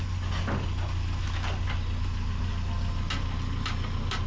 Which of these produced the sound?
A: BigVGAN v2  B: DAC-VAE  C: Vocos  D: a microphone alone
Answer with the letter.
D